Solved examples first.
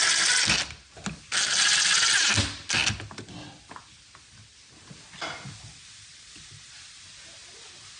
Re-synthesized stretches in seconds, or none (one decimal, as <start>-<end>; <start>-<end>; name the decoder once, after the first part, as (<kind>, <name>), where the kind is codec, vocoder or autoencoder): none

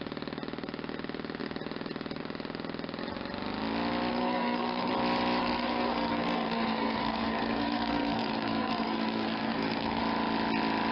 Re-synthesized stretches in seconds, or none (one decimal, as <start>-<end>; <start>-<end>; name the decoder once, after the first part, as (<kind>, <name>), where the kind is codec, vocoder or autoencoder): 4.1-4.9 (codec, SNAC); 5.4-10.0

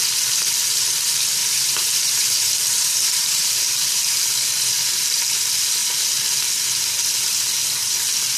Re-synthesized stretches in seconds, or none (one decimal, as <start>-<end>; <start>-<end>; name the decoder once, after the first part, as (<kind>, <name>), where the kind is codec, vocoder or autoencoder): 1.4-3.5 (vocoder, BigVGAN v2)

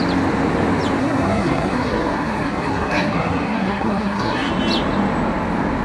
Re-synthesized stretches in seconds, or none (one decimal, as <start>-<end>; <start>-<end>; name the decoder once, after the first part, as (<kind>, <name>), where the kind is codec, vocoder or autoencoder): 1.0-4.5 (codec, SNAC)